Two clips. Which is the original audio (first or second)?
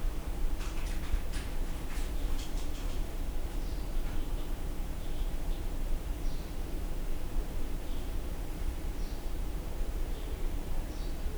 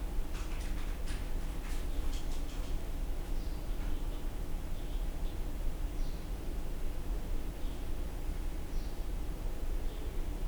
second